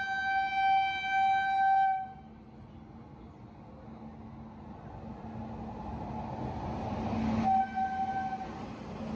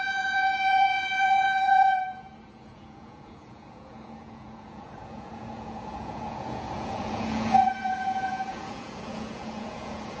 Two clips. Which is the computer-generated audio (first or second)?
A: second